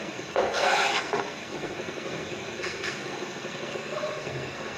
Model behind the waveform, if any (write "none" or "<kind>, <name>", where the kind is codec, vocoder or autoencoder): codec, SNAC